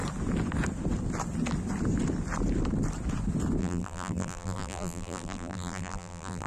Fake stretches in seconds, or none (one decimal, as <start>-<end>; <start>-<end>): 3.6-6.5